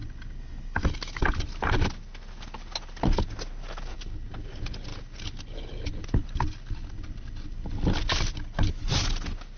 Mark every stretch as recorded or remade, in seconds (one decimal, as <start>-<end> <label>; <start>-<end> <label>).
0.0-9.6 recorded